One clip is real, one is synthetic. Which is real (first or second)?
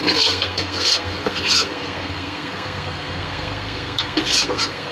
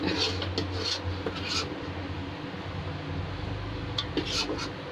second